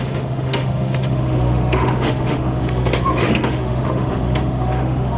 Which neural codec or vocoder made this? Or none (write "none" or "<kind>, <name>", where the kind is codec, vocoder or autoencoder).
autoencoder, DAC-VAE